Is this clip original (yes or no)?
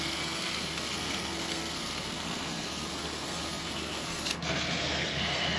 no